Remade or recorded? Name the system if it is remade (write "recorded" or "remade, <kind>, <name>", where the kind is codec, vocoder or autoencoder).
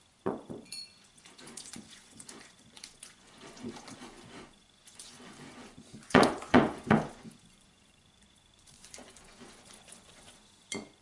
remade, vocoder, Vocos